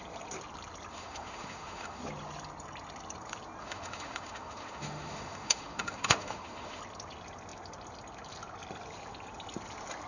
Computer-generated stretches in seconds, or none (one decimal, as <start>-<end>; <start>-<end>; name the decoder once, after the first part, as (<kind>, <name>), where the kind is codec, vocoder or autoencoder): 0.9-2.0 (autoencoder, DAC-VAE); 3.6-6.8

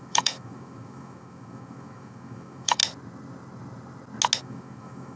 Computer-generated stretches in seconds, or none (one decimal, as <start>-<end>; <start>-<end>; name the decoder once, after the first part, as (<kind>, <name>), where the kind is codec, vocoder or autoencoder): 0.0-2.8 (autoencoder, DAC-VAE); 4.4-5.2

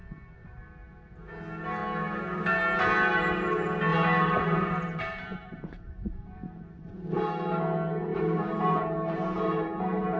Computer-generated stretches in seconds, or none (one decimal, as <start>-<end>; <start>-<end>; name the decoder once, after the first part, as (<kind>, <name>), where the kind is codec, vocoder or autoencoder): 3.9-7.1 (vocoder, BigVGAN v2); 8.1-10.2

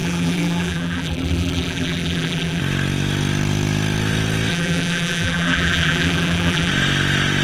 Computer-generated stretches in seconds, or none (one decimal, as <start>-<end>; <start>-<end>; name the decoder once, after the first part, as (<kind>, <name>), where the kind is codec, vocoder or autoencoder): 0.0-2.6 (vocoder, BigVGAN v2); 4.5-6.7

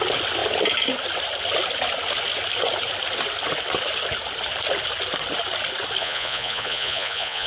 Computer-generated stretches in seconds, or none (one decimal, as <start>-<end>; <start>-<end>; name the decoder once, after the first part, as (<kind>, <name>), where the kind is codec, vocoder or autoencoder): 6.0-7.5 (vocoder, Vocos)

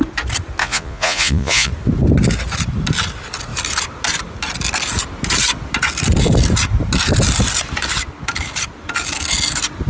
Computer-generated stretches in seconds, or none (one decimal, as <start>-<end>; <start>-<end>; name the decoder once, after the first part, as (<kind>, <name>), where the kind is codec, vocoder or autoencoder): 0.6-1.7 (vocoder, Vocos)